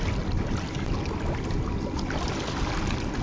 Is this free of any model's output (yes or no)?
yes